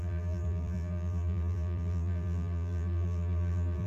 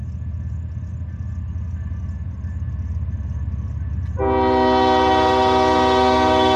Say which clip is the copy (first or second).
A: first